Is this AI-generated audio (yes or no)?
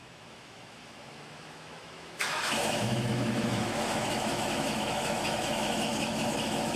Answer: yes